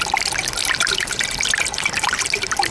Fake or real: fake